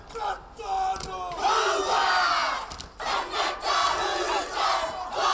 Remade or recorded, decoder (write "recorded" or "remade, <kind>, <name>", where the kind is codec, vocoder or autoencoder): recorded